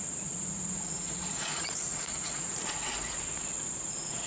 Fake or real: fake